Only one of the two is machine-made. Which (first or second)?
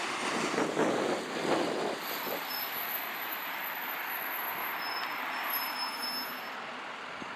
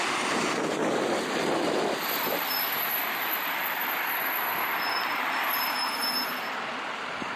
second